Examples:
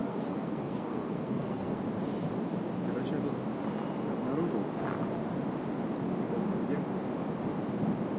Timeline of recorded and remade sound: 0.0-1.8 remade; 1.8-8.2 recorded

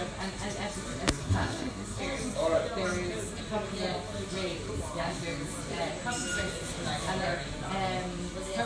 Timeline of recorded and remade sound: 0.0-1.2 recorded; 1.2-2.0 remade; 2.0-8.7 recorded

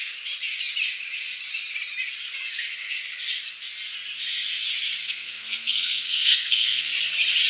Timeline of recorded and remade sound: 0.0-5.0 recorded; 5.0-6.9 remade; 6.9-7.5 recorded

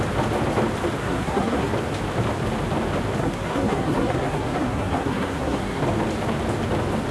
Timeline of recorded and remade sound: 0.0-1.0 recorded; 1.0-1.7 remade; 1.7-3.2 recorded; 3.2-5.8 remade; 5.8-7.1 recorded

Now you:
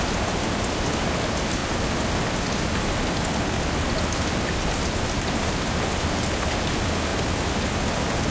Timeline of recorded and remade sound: 0.0-8.3 recorded

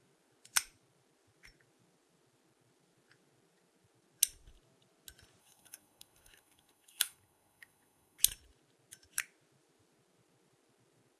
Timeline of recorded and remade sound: 0.0-5.4 recorded; 5.4-8.2 remade; 8.2-11.2 recorded

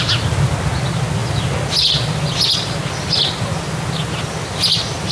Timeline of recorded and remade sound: 0.0-5.1 recorded